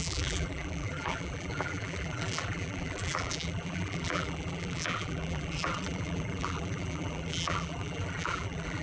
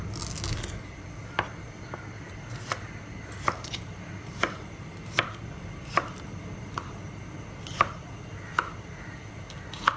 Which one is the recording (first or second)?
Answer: second